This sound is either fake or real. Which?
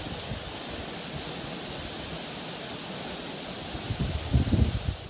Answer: real